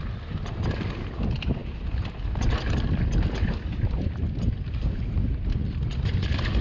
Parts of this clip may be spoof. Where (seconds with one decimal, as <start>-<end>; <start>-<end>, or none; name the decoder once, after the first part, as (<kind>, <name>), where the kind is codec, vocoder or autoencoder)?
none